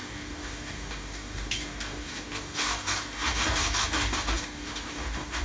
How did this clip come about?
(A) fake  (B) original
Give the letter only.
A